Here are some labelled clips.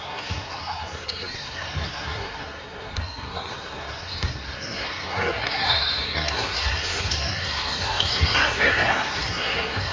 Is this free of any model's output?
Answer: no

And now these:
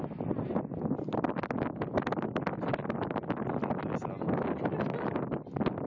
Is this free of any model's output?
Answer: yes